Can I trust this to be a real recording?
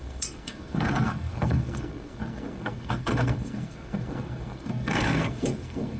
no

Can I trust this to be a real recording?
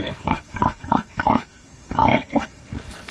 no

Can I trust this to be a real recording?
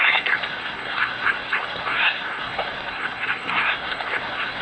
no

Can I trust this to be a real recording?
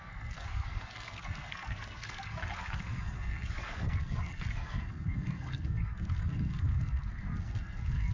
no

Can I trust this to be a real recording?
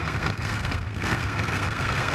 no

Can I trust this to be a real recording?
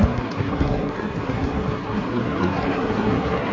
no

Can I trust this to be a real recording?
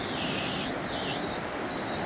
yes